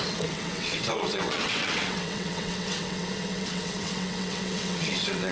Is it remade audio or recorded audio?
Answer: remade